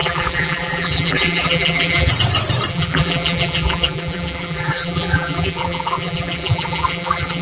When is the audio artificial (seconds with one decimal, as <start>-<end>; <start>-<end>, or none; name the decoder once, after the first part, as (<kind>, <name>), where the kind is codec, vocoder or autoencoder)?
0.0-2.1 (vocoder, BigVGAN v2); 2.7-7.4